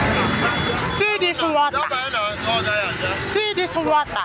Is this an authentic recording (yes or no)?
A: yes